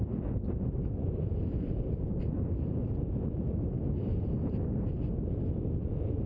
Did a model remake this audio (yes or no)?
no